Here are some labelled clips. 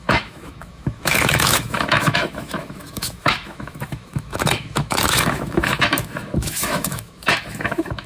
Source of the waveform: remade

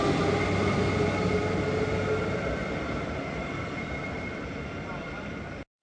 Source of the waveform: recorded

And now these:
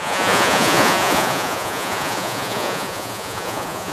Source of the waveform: remade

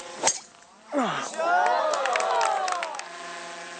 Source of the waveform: recorded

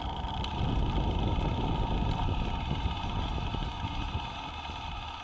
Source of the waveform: recorded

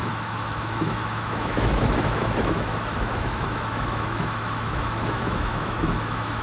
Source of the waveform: remade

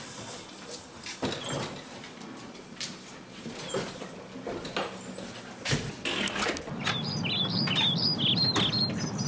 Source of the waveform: recorded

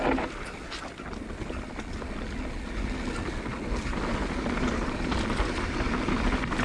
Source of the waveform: recorded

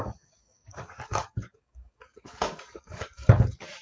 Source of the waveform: remade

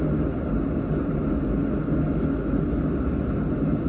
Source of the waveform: recorded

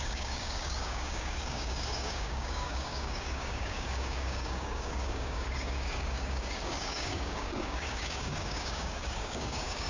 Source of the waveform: remade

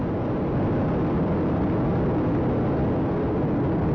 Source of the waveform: recorded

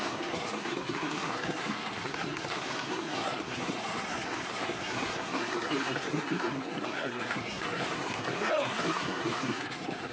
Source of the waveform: remade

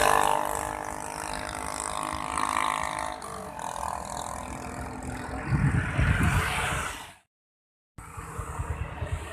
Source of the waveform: recorded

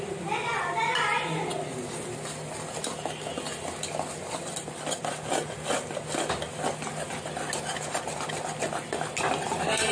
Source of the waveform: recorded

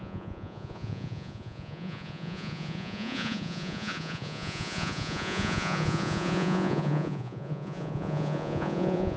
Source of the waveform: remade